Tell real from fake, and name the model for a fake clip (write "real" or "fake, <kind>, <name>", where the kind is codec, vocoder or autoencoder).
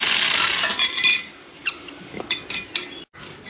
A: real